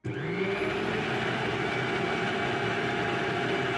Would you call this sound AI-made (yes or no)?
no